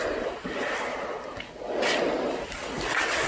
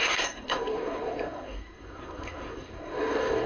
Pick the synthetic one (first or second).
second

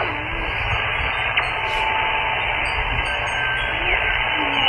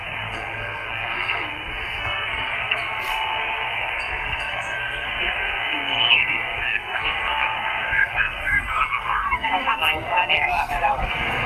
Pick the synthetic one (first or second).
second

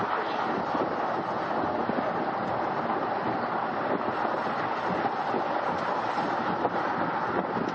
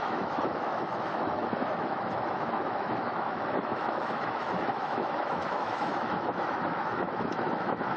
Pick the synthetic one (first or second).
second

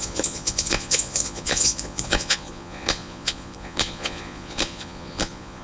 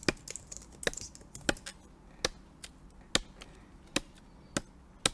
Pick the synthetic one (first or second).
first